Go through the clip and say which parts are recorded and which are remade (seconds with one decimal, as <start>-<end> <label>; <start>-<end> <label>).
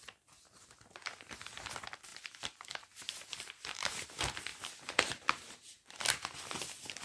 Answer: 0.0-2.1 recorded; 2.1-4.1 remade; 4.1-4.5 recorded; 4.5-6.0 remade; 6.0-7.0 recorded